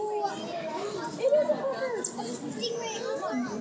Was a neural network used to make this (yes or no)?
no